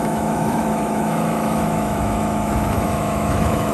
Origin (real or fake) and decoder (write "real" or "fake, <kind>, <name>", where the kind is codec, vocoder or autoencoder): fake, autoencoder, DAC-VAE